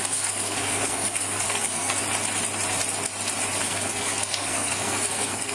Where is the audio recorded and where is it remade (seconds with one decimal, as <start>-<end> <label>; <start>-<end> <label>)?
0.0-2.0 remade; 2.0-3.6 recorded; 3.6-5.5 remade